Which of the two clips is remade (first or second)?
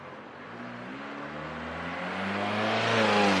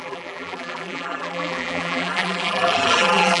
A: second